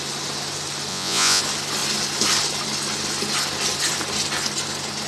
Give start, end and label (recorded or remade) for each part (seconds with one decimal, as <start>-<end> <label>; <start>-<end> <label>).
0.0-0.9 recorded; 0.9-1.4 remade; 1.4-5.1 recorded